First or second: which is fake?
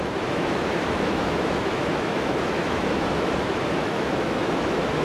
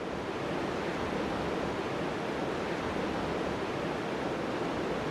first